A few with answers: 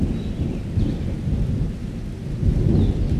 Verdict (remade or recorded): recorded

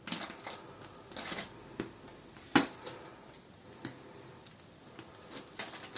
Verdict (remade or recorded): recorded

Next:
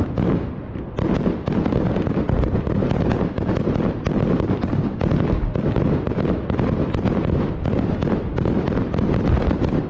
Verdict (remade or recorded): remade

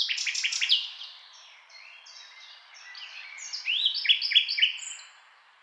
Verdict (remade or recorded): remade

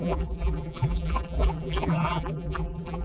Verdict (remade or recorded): remade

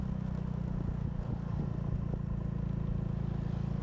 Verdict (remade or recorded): recorded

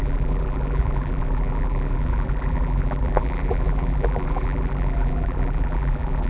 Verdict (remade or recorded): remade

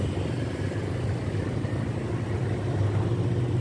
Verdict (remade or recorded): recorded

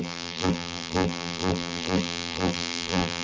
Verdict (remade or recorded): remade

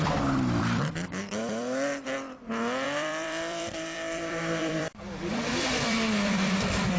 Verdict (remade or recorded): remade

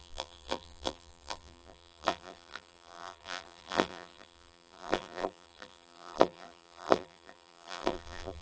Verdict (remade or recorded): remade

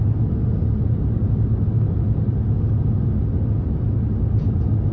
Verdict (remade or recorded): recorded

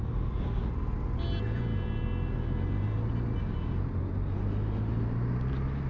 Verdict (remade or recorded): recorded